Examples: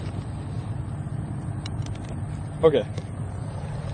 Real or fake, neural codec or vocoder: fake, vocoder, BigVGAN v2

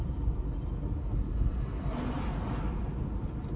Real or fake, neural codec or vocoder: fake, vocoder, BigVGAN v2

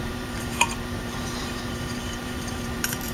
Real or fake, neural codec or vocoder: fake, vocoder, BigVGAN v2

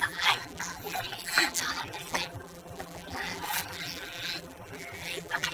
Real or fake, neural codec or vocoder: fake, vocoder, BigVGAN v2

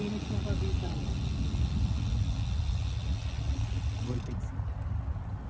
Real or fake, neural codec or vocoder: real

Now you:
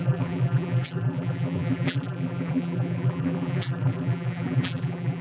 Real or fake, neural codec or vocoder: fake, vocoder, BigVGAN v2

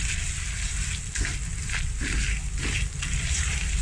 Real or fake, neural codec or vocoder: real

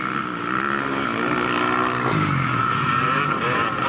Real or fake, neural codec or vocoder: real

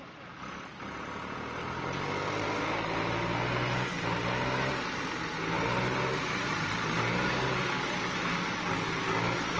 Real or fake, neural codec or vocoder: real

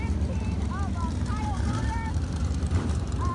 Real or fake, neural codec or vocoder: fake, vocoder, BigVGAN v2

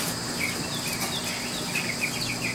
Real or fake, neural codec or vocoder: real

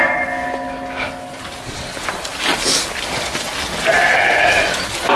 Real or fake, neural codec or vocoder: real